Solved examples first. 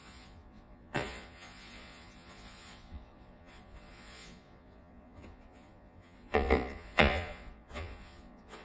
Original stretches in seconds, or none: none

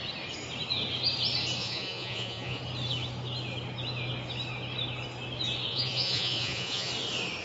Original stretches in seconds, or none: 0.0-1.6; 2.6-5.7; 6.9-7.4